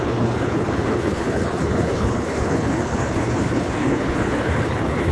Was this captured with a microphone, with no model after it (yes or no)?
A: no